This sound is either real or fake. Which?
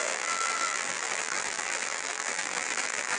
fake